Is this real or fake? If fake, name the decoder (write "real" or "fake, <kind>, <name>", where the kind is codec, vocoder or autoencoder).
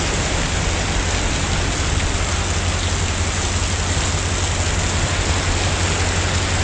real